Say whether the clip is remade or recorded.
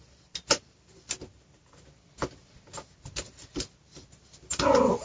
recorded